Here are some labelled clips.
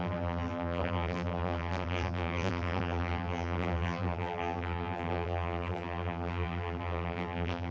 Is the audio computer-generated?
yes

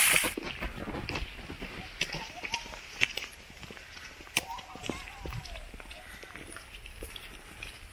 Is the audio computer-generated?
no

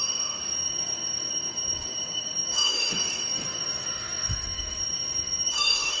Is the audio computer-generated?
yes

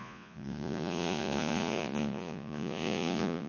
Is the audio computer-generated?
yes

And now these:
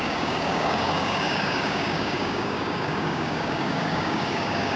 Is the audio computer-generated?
yes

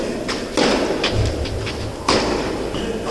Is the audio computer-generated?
no